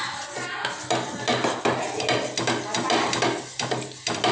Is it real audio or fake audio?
real